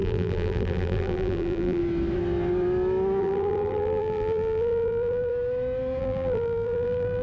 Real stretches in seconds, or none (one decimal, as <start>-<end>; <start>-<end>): 1.8-3.2; 5.3-6.0

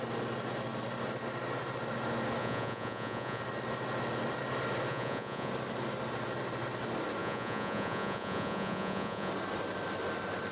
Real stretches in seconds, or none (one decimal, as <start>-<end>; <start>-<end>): 0.0-2.4; 3.4-4.9; 5.5-7.2; 9.3-10.5

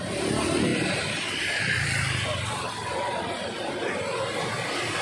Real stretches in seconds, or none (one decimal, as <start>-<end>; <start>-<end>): 0.0-5.0

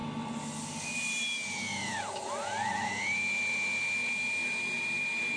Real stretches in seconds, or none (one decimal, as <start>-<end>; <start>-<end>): 0.0-5.4